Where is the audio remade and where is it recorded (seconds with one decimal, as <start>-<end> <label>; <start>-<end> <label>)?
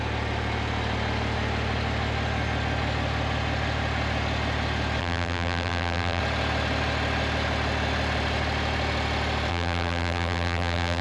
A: 0.0-5.0 recorded; 5.0-6.2 remade; 6.2-9.5 recorded; 9.5-11.0 remade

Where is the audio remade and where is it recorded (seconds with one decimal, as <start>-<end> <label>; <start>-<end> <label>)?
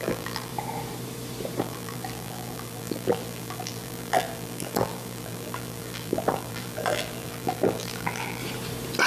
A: 0.0-0.5 remade; 0.5-1.6 recorded; 1.6-8.4 remade; 8.4-9.1 recorded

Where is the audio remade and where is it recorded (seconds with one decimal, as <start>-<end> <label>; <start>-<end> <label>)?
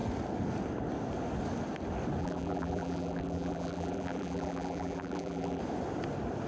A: 0.0-2.2 recorded; 2.2-5.6 remade; 5.6-6.5 recorded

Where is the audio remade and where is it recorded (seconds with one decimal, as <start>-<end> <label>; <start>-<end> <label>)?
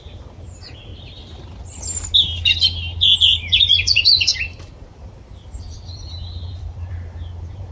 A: 0.0-0.9 remade; 0.9-3.4 recorded; 3.4-4.3 remade; 4.3-4.9 recorded; 4.9-7.7 remade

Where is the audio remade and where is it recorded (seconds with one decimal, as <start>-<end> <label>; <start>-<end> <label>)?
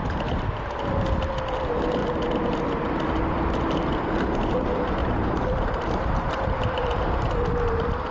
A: 0.0-0.8 remade; 0.8-2.0 recorded; 2.0-2.6 remade; 2.6-5.0 recorded; 5.0-7.3 remade; 7.3-8.1 recorded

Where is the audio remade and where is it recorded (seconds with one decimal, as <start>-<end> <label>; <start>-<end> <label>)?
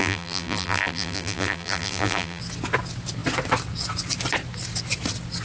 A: 0.0-2.4 remade; 2.4-5.4 recorded